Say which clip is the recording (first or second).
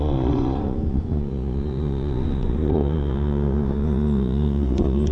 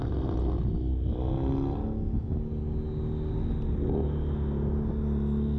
second